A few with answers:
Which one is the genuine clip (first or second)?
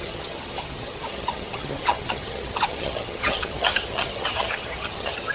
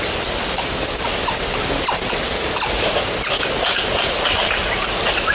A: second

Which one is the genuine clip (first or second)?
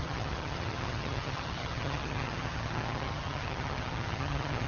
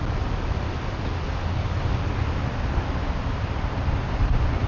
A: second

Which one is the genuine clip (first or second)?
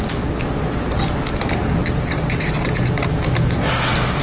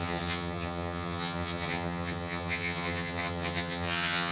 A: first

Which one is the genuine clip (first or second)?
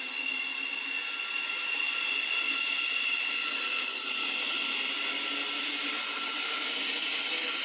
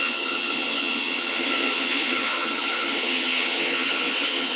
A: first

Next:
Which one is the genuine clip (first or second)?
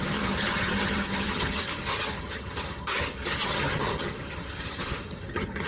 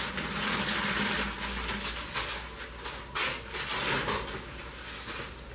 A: second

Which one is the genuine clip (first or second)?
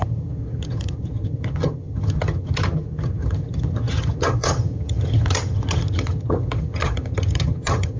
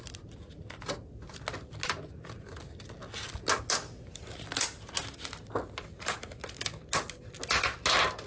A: second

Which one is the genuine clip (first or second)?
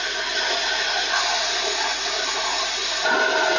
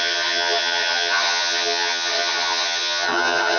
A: first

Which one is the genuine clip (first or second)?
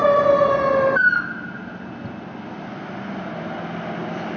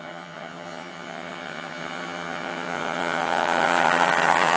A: first